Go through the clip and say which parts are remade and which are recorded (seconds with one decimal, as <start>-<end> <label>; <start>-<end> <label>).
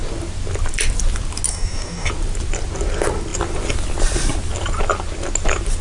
0.0-1.5 recorded; 1.5-2.1 remade; 2.1-5.8 recorded